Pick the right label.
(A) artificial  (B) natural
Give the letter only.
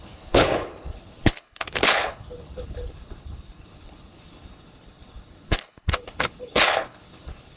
A